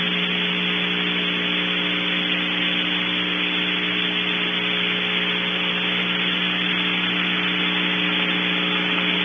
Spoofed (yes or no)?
no